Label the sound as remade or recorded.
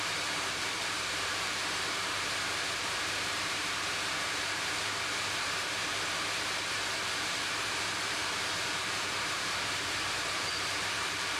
remade